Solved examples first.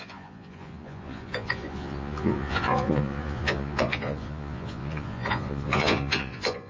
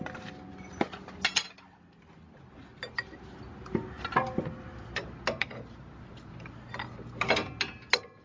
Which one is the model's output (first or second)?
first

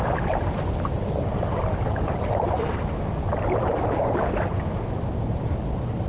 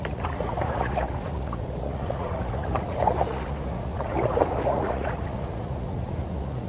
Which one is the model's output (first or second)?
second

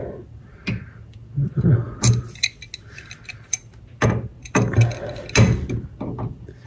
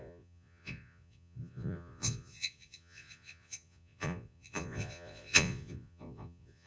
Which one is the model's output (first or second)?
second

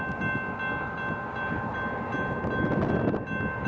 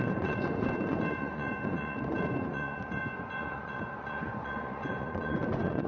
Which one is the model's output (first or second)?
second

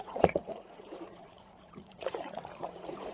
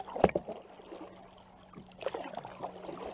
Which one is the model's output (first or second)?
first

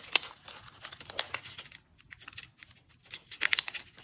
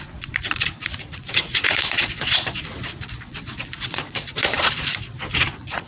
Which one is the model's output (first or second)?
second